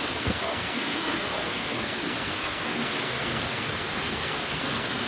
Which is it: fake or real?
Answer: fake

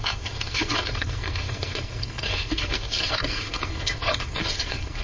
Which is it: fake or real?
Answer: fake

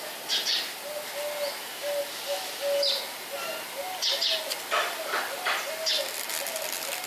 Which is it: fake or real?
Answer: real